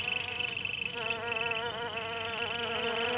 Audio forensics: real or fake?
real